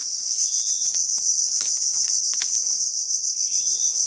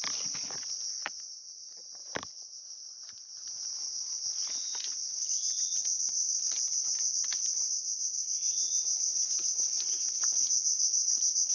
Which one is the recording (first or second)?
second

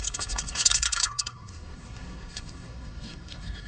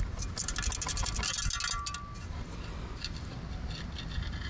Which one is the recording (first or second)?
second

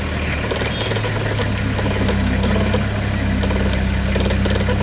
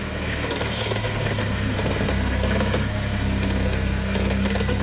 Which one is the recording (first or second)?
first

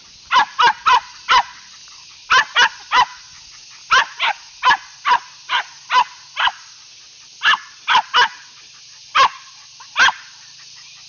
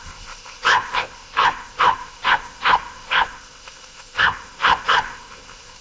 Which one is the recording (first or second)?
first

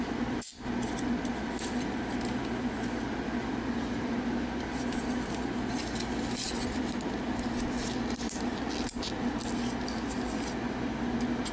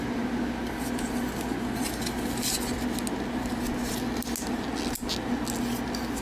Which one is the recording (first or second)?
second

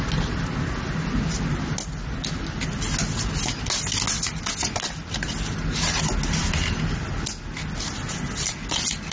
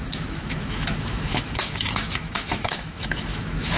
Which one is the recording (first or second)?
first